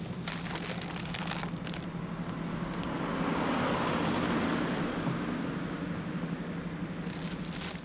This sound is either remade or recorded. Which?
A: recorded